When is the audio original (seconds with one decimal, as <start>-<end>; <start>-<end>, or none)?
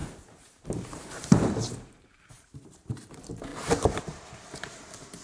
3.1-3.5; 4.0-5.2